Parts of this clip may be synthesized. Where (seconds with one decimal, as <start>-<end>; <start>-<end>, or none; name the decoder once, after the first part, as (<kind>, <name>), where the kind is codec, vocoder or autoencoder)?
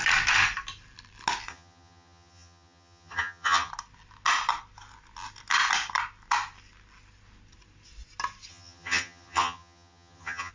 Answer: 1.5-3.7 (vocoder, HiFi-GAN); 8.5-10.5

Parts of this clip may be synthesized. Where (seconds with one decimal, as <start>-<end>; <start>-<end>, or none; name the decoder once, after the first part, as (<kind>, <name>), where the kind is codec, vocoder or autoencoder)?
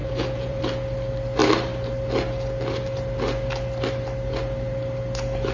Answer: 0.0-0.6 (vocoder, Vocos)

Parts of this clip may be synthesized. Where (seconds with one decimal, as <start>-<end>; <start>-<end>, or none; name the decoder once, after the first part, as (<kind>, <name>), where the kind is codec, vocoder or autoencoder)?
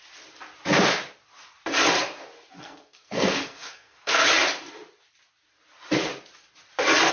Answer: 2.6-4.2 (codec, SNAC)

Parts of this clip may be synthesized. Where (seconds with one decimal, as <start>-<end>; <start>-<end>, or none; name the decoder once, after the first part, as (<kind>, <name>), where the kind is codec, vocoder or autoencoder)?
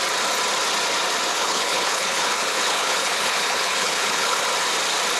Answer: 1.3-4.4 (codec, HILCodec)